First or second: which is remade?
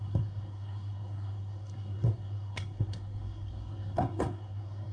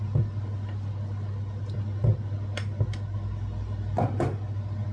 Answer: first